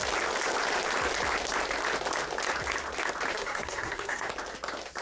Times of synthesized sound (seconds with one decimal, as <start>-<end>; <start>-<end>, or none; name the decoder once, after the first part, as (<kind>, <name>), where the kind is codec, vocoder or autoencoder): 3.3-4.3 (codec, SNAC)

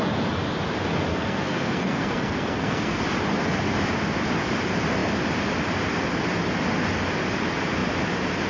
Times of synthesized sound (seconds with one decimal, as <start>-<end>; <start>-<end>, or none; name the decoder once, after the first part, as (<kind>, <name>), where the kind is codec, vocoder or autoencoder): 1.1-3.0 (codec, SNAC)

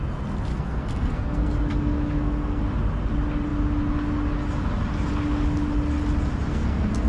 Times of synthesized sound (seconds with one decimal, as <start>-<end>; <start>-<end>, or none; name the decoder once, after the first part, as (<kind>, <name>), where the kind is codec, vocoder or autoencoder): 0.5-2.6 (codec, SNAC); 6.5-7.1

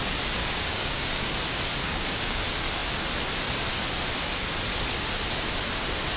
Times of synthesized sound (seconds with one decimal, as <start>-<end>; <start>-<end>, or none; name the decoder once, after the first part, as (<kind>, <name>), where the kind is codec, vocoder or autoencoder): 0.4-1.3 (codec, DAC); 1.8-2.4

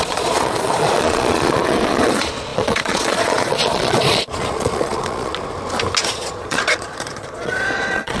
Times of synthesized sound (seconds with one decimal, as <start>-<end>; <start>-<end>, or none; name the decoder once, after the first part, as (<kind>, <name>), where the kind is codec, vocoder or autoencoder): 0.0-5.3 (vocoder, Vocos); 6.0-8.2

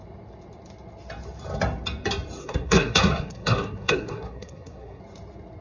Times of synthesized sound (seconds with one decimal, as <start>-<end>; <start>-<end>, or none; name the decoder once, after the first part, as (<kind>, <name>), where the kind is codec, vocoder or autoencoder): 2.4-5.0 (codec, SNAC)

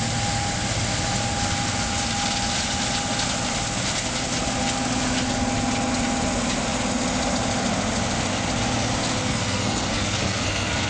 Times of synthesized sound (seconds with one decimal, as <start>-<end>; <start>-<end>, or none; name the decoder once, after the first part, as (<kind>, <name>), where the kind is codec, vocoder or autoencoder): 9.2-10.9 (codec, SNAC)

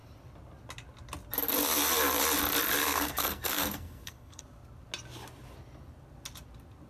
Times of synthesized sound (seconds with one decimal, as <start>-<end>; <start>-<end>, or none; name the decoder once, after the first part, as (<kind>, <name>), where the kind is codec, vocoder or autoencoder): 2.8-4.4 (codec, SNAC)